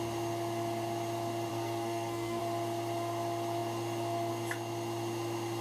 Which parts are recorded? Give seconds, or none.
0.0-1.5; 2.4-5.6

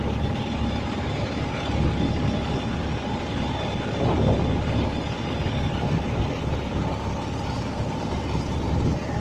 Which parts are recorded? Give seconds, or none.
0.0-9.2